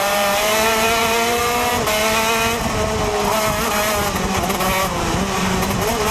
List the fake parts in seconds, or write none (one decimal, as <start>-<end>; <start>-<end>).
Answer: 0.0-1.7; 5.4-6.1